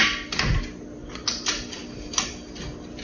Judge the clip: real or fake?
real